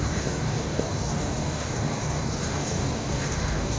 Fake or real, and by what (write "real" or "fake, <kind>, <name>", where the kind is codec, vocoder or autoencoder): fake, codec, DAC